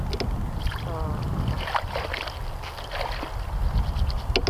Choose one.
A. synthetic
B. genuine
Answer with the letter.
B